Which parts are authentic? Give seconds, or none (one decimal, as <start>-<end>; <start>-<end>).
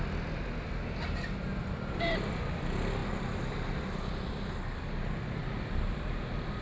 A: 0.0-6.6